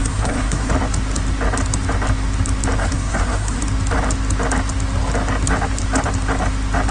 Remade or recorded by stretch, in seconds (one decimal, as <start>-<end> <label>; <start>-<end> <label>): 0.0-0.7 remade; 0.7-2.8 recorded; 2.8-3.6 remade; 3.6-6.9 recorded